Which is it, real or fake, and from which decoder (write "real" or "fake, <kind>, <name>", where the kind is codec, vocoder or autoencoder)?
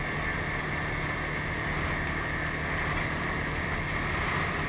real